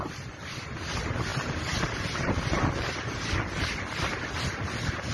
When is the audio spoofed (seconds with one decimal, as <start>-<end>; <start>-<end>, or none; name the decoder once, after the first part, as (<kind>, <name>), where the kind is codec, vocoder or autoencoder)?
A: 1.3-3.2 (vocoder, BigVGAN v2)